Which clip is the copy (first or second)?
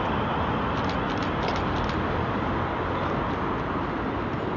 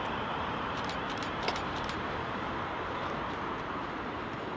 second